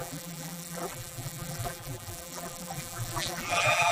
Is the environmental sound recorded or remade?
remade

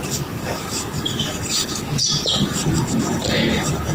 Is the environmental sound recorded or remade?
remade